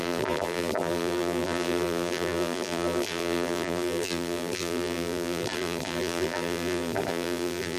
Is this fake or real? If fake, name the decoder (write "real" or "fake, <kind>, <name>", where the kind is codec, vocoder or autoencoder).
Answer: fake, vocoder, BigVGAN v2